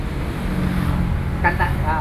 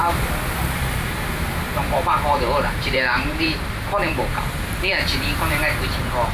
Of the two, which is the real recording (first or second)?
first